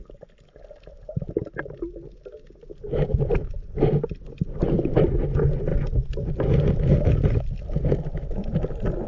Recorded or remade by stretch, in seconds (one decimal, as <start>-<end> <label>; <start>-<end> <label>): 0.0-9.1 recorded